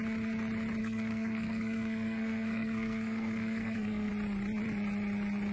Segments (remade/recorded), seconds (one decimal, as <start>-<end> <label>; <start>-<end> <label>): 0.0-0.8 recorded; 0.8-4.1 remade; 4.1-5.5 recorded